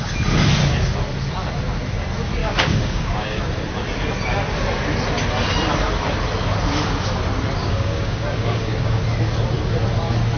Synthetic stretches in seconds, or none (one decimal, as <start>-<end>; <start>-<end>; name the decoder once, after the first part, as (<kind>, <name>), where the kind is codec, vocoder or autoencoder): 2.4-3.4 (codec, DAC); 7.6-9.0